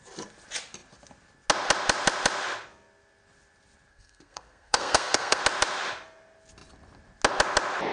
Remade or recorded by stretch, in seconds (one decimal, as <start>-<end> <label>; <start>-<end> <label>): 0.0-3.9 recorded; 3.9-5.4 remade; 5.4-7.9 recorded